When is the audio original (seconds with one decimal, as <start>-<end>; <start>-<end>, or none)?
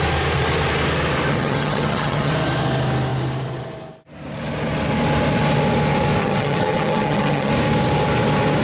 0.0-1.3; 2.3-6.2; 7.5-8.6